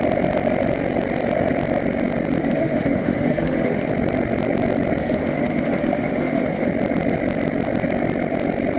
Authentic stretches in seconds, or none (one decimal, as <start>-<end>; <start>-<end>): 0.0-2.4; 3.9-5.0; 6.7-8.8